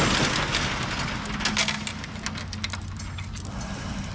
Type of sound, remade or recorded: recorded